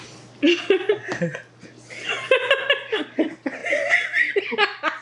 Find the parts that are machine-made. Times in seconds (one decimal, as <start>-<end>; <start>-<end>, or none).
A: none